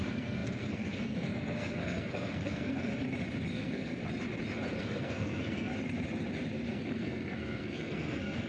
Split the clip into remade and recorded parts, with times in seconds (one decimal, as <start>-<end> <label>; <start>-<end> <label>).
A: 0.0-2.9 remade; 2.9-3.5 recorded; 3.5-4.0 remade; 4.0-4.8 recorded; 4.8-5.7 remade; 5.7-6.7 recorded; 6.7-8.5 remade